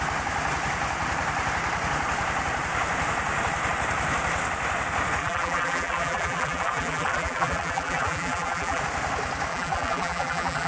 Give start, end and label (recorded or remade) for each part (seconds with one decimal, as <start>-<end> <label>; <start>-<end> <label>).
0.0-5.2 recorded; 5.2-8.8 remade; 8.8-9.5 recorded; 9.5-10.7 remade